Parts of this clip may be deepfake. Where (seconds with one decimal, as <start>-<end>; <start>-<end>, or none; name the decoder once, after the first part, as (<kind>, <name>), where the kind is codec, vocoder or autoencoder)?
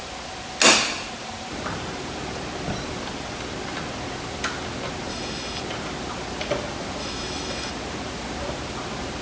5.1-5.6 (autoencoder, DAC-VAE); 7.0-7.7